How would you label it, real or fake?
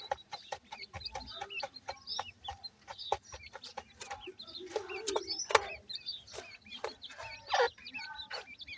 real